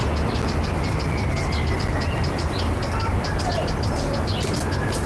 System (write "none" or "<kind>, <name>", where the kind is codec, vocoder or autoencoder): none